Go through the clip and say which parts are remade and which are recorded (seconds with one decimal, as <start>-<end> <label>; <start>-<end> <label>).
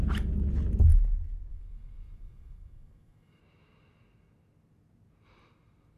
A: 0.0-1.5 recorded; 1.5-3.4 remade; 3.4-6.0 recorded